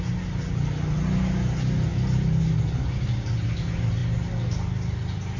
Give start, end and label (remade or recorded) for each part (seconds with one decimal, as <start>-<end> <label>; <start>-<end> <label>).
0.0-5.4 recorded